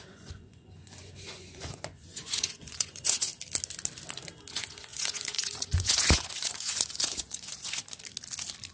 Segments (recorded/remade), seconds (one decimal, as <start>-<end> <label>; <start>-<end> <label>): 0.0-3.3 remade; 3.3-4.5 recorded; 4.5-7.8 remade; 7.8-8.7 recorded